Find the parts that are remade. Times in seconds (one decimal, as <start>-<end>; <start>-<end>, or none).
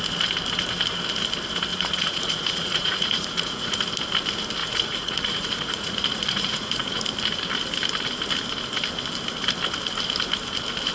1.7-3.8; 4.6-7.0